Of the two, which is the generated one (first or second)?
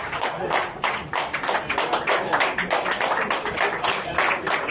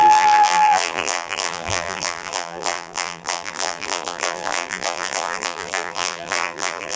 second